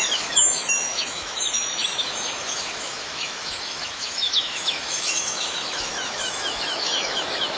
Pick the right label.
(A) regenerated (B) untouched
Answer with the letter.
A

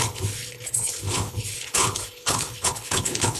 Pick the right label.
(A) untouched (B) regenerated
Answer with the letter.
B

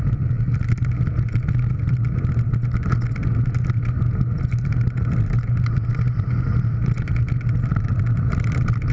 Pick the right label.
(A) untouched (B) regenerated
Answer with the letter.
A